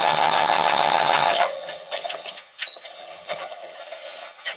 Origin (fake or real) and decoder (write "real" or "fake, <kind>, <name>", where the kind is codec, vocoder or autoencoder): fake, vocoder, HiFi-GAN